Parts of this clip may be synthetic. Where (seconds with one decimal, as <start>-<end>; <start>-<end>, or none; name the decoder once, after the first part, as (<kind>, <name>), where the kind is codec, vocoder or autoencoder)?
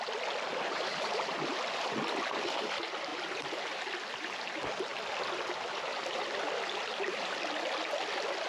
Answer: none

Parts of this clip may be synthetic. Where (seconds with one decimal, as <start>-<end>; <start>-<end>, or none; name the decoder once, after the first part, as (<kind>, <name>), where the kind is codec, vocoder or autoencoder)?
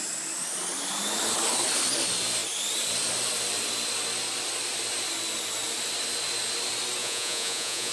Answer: 7.0-7.9 (vocoder, Vocos)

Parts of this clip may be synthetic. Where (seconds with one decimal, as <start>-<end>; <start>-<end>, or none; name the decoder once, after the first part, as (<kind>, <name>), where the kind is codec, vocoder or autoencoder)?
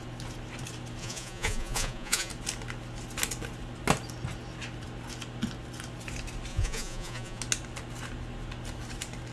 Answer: 1.0-2.3 (vocoder, Vocos); 6.5-7.4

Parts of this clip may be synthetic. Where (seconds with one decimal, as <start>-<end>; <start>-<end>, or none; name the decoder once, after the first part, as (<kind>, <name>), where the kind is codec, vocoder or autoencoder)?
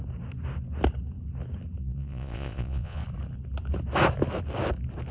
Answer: 1.8-3.0 (vocoder, Vocos)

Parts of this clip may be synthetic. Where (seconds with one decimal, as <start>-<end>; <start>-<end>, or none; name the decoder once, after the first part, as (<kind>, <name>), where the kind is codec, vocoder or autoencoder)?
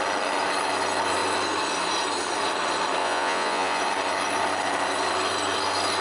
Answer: 3.0-3.8 (vocoder, Vocos)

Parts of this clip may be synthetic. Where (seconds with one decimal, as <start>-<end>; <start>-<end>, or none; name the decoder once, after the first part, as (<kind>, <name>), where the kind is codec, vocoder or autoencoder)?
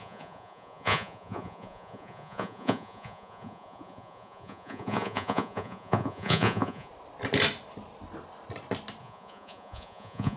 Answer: 0.0-6.9 (vocoder, Vocos); 9.0-10.4